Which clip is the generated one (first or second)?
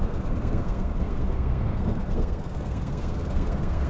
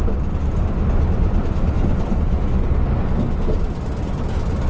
first